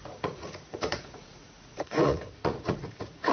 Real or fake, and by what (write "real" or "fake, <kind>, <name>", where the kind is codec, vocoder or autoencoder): fake, vocoder, Vocos